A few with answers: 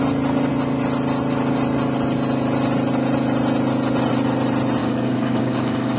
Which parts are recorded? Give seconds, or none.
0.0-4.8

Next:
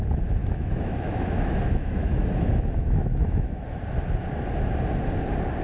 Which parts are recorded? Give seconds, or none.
0.0-0.4; 3.8-5.6

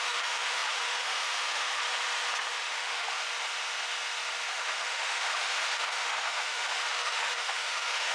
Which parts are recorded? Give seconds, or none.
1.8-2.5; 3.2-4.5

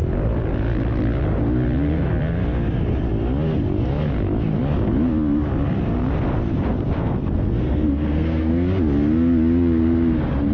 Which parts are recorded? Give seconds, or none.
0.0-7.0; 8.5-10.5

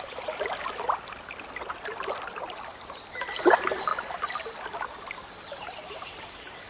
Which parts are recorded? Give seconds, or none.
none